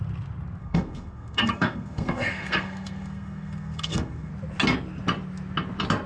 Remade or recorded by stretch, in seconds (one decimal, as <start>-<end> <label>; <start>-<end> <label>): 0.0-0.6 recorded; 0.6-4.3 remade; 4.3-6.1 recorded